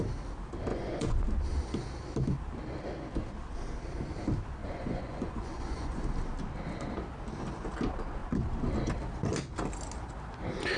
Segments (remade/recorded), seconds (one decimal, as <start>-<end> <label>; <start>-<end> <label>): 0.0-0.7 recorded; 0.7-1.2 remade; 1.2-4.6 recorded; 4.6-6.0 remade; 6.0-10.8 recorded